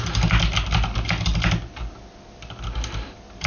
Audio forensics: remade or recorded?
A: recorded